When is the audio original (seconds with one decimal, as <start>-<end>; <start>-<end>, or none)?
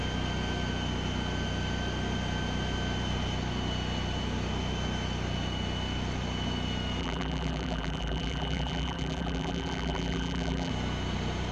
0.0-7.0; 10.7-11.5